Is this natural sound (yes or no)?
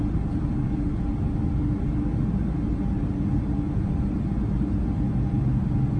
yes